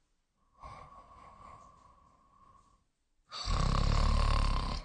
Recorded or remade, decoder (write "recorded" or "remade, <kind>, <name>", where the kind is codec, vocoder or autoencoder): remade, vocoder, BigVGAN v2